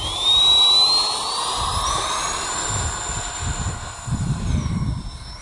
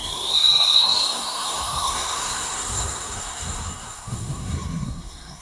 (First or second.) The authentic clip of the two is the first